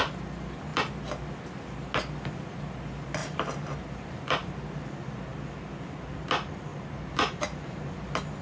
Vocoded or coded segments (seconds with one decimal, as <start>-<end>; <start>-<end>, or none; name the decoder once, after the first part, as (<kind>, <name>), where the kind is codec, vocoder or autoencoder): 3.2-4.5 (vocoder, BigVGAN v2); 6.7-7.9